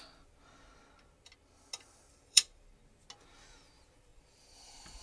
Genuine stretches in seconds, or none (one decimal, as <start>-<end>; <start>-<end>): 0.0-2.1; 2.7-4.1